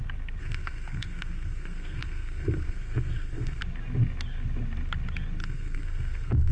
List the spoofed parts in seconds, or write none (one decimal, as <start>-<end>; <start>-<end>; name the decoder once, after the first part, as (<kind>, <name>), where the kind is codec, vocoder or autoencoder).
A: 0.4-3.6 (codec, SNAC); 5.4-6.5